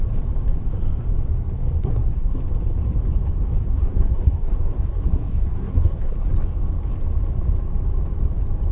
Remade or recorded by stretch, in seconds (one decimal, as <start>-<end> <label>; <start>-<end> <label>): 0.0-1.8 recorded; 1.8-2.4 remade; 2.4-3.7 recorded; 3.7-6.3 remade; 6.3-8.7 recorded